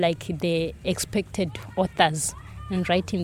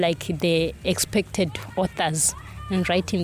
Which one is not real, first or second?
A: first